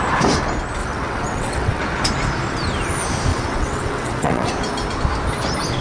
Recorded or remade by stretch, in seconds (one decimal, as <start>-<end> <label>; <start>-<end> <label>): 0.0-0.8 recorded; 0.8-1.8 remade; 1.8-3.3 recorded; 3.3-4.5 remade; 4.5-5.8 recorded